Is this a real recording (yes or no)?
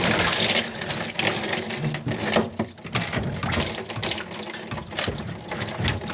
yes